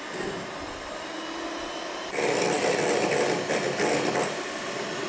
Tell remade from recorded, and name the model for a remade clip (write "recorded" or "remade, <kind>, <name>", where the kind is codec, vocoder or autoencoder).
recorded